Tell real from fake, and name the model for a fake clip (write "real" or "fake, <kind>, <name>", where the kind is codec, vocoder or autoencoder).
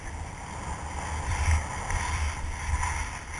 real